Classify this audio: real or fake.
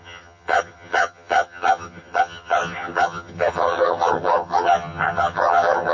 fake